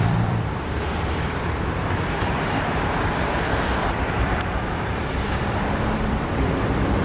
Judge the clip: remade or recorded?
remade